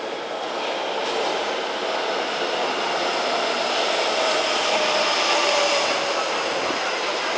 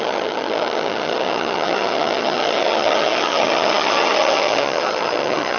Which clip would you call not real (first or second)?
second